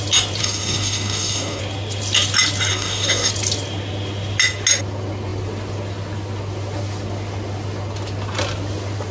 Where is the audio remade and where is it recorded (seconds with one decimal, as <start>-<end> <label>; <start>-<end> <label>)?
0.0-0.4 recorded; 0.4-1.6 remade; 1.6-2.7 recorded; 2.7-3.3 remade; 3.3-9.1 recorded